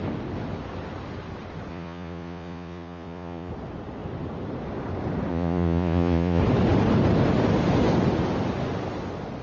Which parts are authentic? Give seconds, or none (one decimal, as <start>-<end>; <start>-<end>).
0.0-1.7; 3.5-5.3; 6.4-9.4